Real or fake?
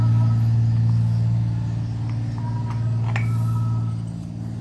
real